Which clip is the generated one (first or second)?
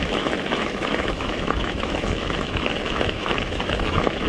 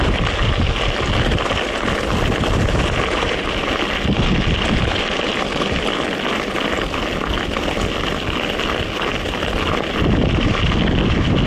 first